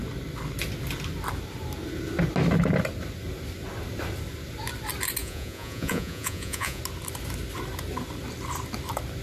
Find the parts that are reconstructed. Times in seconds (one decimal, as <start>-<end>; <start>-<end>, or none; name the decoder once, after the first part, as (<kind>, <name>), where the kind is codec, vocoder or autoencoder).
5.2-6.8 (vocoder, Vocos)